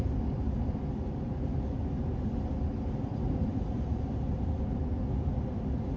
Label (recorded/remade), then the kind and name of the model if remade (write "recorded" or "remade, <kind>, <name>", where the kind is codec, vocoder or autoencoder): recorded